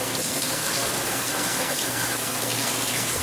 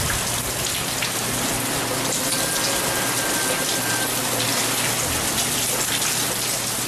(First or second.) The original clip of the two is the second